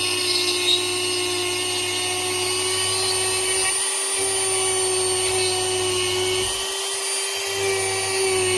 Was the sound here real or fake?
real